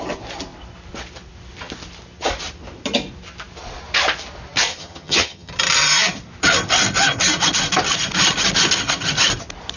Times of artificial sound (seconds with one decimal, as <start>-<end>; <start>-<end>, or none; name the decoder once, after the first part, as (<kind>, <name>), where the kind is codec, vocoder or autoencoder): 4.7-5.5 (vocoder, HiFi-GAN)